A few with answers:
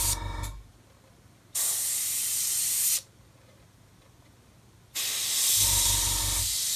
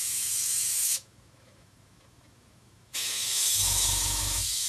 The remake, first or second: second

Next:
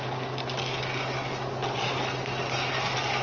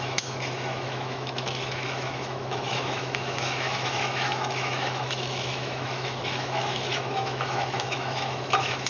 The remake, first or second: second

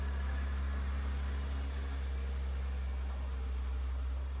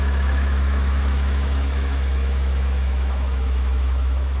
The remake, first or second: second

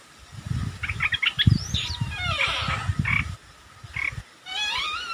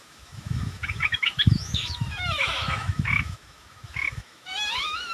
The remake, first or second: second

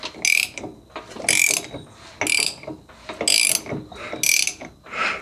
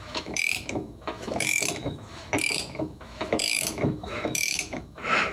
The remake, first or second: second